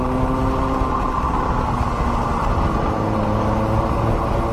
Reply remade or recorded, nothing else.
recorded